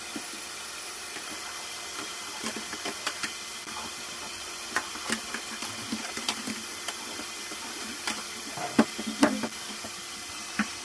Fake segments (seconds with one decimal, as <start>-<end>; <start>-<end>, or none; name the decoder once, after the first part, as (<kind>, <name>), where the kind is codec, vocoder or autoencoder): 4.3-4.9 (vocoder, Vocos)